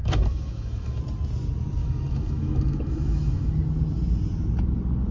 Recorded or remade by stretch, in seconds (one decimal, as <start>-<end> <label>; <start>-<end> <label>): 0.0-1.0 remade; 1.0-1.8 recorded; 1.8-3.5 remade; 3.5-5.1 recorded